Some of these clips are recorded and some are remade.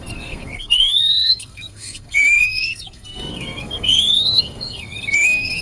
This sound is remade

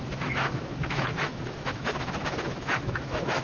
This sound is remade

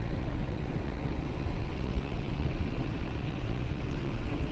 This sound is remade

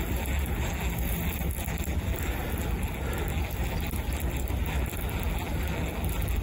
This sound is recorded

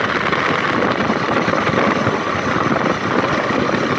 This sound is recorded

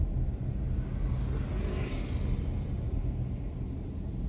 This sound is recorded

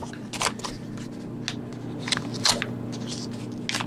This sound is recorded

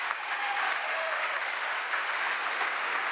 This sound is remade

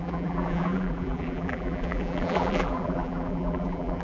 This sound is remade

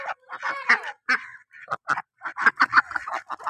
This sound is recorded